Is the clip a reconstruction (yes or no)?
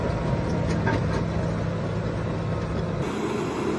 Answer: no